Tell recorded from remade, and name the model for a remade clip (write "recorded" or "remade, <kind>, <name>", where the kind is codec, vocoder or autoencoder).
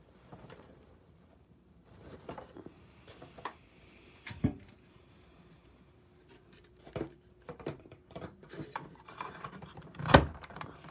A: remade, vocoder, BigVGAN v2